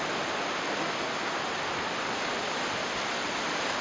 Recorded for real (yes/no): yes